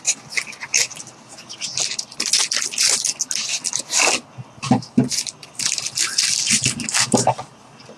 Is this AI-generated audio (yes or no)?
no